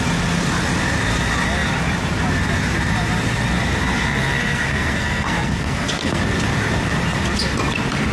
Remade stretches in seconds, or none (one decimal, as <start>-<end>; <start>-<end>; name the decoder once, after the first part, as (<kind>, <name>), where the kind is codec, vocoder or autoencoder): 4.4-6.2 (codec, SNAC)